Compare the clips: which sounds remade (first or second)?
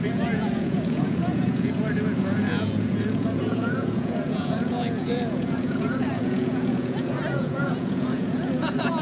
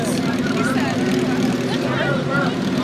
first